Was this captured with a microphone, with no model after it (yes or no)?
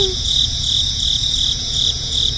no